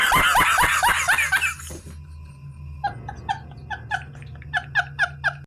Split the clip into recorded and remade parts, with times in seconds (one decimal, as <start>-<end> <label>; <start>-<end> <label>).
0.0-5.5 recorded